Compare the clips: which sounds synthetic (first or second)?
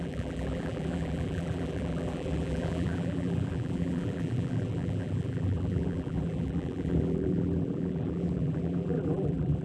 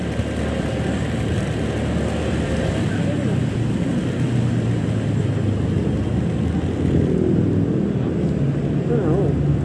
first